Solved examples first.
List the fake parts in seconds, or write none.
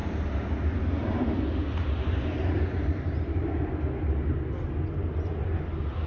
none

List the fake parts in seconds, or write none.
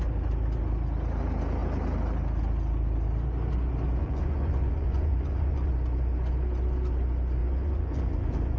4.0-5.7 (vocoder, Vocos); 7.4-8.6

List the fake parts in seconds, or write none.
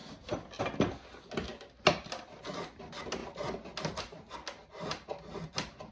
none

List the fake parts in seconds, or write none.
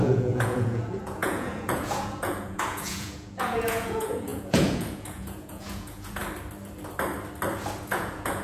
0.0-6.2 (vocoder, Vocos); 7.8-8.4